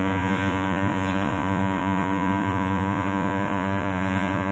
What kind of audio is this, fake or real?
fake